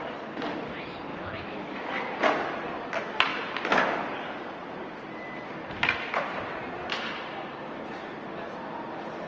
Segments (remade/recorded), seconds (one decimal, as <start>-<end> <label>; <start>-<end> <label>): 0.0-1.1 recorded; 1.1-1.8 remade; 1.8-9.3 recorded